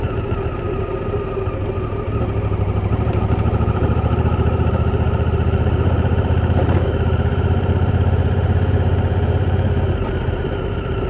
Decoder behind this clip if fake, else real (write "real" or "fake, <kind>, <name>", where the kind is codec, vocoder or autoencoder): fake, vocoder, BigVGAN v2